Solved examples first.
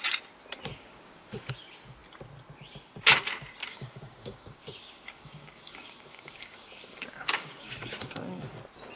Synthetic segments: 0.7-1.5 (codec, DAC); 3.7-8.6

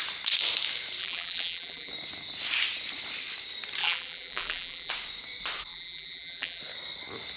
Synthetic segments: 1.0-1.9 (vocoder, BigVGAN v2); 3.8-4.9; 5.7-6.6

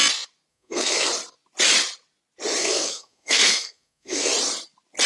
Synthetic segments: 0.5-1.1 (codec, SNAC); 2.6-4.3